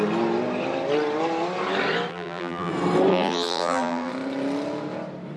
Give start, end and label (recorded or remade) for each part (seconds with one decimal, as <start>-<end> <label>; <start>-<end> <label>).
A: 0.0-2.1 recorded; 2.1-2.7 remade; 2.7-3.1 recorded; 3.1-4.1 remade; 4.1-5.4 recorded